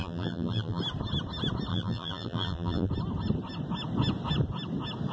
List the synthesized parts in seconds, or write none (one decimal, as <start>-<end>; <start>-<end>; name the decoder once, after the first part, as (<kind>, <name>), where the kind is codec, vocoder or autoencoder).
0.0-0.8 (vocoder, BigVGAN v2); 1.7-2.9

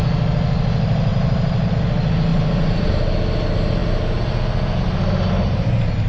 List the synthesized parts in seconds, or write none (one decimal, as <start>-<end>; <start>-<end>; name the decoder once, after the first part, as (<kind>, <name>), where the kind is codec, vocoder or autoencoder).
1.1-1.7 (vocoder, BigVGAN v2); 2.3-2.9

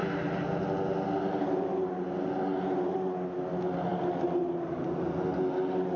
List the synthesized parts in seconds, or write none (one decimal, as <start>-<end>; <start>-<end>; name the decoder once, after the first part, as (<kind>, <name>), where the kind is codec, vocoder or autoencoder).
none

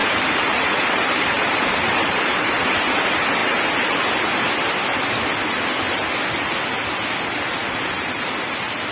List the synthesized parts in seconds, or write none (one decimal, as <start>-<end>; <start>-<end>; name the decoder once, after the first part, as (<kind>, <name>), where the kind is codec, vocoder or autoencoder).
0.0-2.6 (vocoder, BigVGAN v2)